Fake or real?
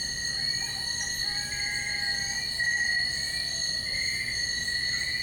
fake